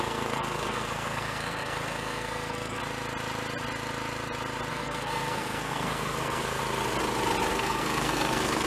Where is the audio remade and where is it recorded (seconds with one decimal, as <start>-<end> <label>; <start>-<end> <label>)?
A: 0.0-2.8 remade; 2.8-4.7 recorded; 4.7-6.6 remade; 6.6-7.5 recorded; 7.5-8.7 remade

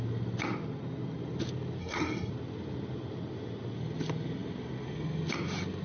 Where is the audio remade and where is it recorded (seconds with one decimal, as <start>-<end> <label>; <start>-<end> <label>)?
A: 0.0-1.8 recorded; 1.8-2.3 remade; 2.3-5.8 recorded

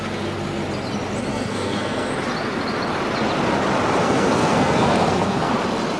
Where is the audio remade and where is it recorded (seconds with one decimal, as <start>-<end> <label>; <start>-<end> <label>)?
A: 0.0-1.3 recorded; 1.3-2.1 remade; 2.1-4.0 recorded; 4.0-5.5 remade; 5.5-6.0 recorded

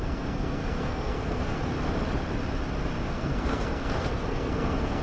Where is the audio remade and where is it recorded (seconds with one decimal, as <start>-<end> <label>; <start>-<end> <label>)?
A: 0.0-1.6 remade; 1.6-3.1 recorded; 3.1-5.0 remade

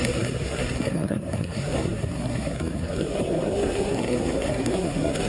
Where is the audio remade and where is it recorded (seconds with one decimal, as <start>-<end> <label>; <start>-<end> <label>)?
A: 0.0-5.3 remade

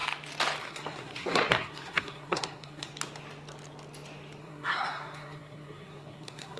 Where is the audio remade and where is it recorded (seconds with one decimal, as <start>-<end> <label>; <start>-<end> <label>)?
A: 0.0-0.6 recorded; 0.6-2.9 remade; 2.9-4.4 recorded; 4.4-6.6 remade

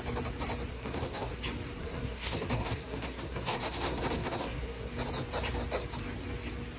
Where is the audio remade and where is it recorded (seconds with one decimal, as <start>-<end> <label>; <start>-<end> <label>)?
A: 0.0-0.7 recorded; 0.7-1.3 remade; 1.3-1.8 recorded; 1.8-4.9 remade; 4.9-6.8 recorded